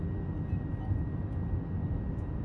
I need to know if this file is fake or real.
real